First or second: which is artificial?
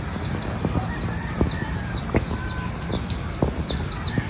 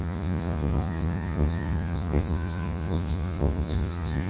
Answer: second